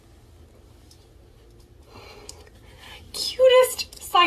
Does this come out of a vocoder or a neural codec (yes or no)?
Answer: no